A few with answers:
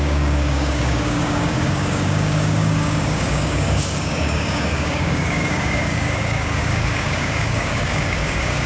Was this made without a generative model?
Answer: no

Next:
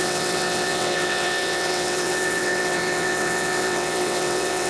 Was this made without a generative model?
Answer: no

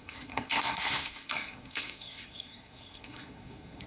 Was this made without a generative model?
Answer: no